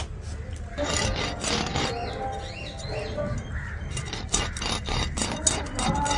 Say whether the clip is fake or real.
real